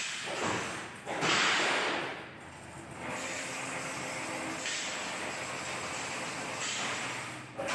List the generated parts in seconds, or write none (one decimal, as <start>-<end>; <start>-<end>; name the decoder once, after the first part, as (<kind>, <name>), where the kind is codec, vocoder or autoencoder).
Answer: none